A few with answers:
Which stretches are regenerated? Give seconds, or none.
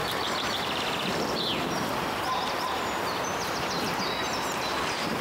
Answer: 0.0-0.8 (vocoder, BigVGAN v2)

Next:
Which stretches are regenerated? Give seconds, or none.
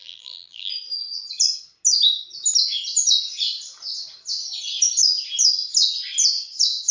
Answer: 0.0-0.7 (vocoder, BigVGAN v2)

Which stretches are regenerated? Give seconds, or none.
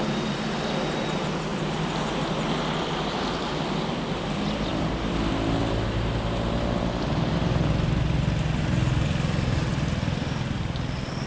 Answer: 1.5-2.3 (vocoder, BigVGAN v2); 4.7-5.3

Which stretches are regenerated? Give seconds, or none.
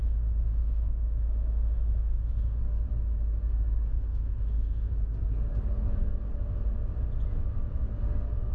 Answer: 0.0-2.6 (autoencoder, DAC-VAE); 3.9-4.9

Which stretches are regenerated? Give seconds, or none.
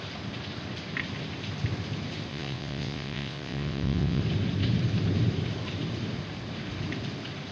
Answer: 2.3-4.2 (vocoder, WaveNeXt)